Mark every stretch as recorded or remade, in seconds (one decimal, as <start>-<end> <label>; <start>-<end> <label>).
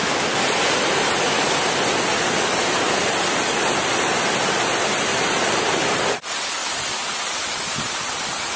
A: 0.0-8.6 recorded